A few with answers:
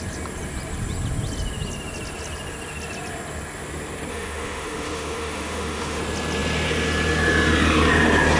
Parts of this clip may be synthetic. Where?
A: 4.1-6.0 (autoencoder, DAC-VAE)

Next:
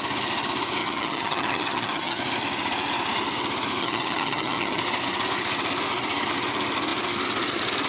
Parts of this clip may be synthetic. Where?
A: 0.8-2.2 (vocoder, HiFi-GAN); 3.8-4.8

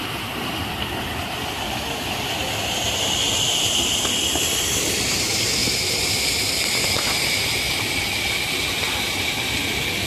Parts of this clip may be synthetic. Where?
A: 5.6-6.2 (vocoder, BigVGAN v2)

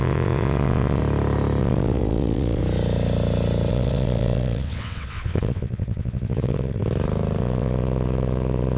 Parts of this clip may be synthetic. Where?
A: 0.0-1.0 (vocoder, WaveNeXt); 1.6-2.6; 3.7-6.8; 7.4-8.8

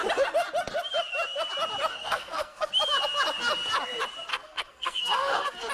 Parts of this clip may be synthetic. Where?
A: 1.9-2.7 (codec, SNAC); 4.3-5.7

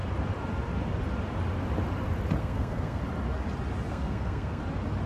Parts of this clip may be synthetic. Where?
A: 2.4-3.0 (codec, SNAC); 3.9-4.6

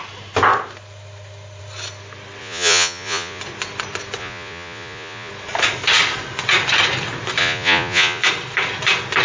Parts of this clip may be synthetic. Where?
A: 2.4-3.4 (vocoder, Vocos); 4.2-5.3; 7.4-8.2

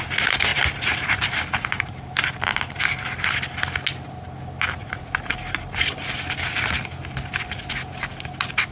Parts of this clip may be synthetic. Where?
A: 0.5-2.0 (vocoder, BigVGAN v2); 4.8-6.0